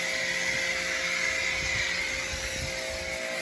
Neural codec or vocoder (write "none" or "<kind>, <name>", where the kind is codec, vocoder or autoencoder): none